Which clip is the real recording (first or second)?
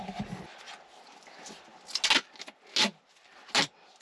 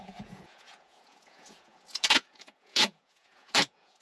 first